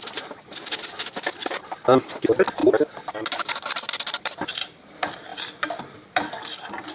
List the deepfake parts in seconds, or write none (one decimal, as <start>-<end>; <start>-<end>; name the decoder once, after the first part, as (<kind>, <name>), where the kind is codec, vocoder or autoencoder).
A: 0.0-5.3 (vocoder, BigVGAN v2); 5.8-6.9